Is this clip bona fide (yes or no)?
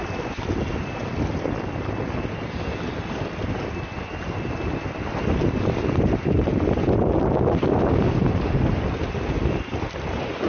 yes